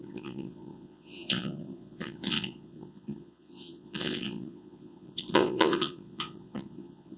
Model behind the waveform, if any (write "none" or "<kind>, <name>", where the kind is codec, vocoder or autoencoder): vocoder, Vocos